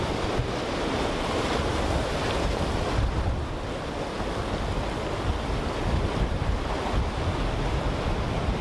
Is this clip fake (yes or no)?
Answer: no